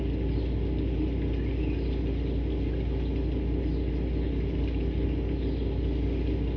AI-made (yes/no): no